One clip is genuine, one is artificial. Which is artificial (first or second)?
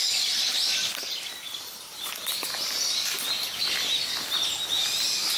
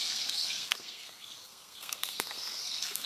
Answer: second